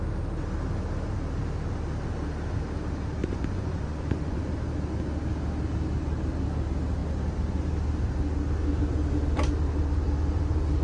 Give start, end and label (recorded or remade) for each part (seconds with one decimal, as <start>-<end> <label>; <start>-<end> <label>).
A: 0.0-3.2 recorded; 3.2-4.4 remade; 4.4-10.8 recorded